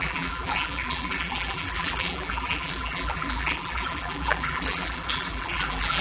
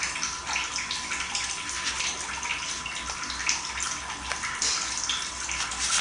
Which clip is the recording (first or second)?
second